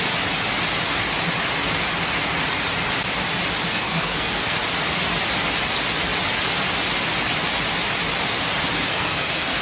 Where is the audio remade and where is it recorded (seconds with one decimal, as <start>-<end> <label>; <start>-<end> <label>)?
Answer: 0.0-3.7 recorded; 3.7-4.6 remade; 4.6-8.9 recorded; 8.9-9.6 remade